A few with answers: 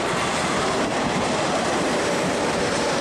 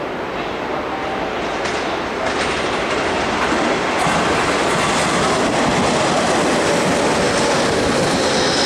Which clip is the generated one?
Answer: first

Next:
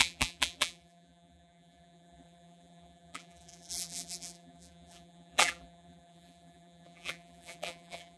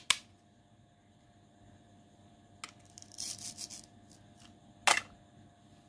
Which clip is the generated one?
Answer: first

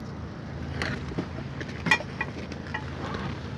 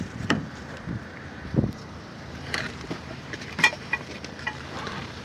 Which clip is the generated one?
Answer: second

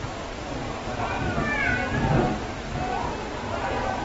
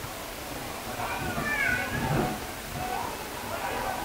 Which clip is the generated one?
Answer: second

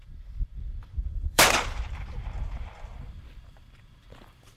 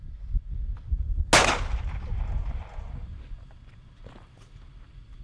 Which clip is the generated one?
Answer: first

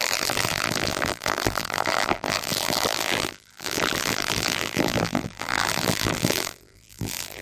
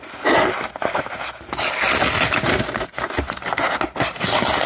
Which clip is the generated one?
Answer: first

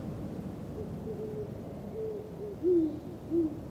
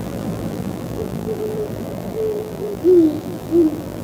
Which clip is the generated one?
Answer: second